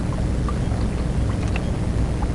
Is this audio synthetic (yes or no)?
no